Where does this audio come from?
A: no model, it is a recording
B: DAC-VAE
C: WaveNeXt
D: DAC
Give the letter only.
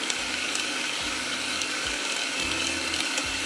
D